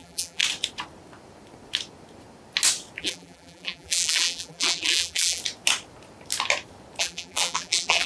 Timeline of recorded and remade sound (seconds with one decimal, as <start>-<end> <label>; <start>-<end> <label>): 0.0-0.4 remade; 0.4-3.0 recorded; 3.0-5.4 remade; 5.4-7.0 recorded; 7.0-8.1 remade